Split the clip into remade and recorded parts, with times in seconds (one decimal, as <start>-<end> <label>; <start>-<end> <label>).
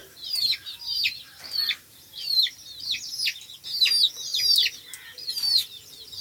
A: 0.0-3.7 remade; 3.7-6.2 recorded